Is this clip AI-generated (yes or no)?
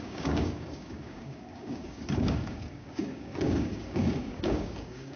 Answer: yes